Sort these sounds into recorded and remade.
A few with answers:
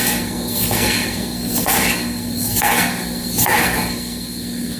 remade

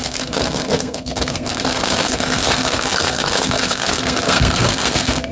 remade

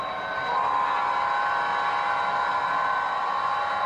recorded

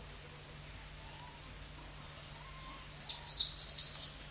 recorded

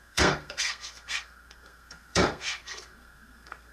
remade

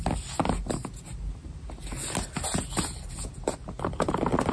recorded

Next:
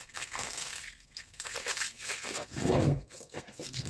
remade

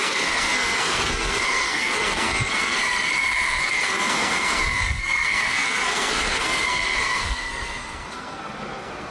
remade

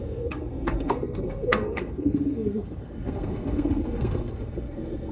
remade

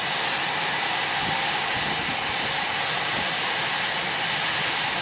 recorded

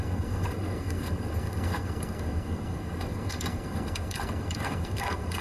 remade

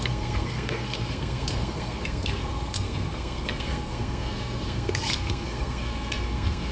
remade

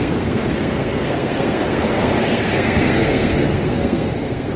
remade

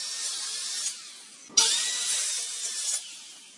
recorded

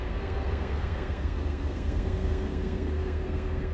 remade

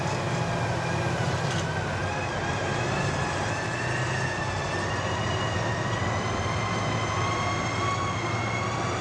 recorded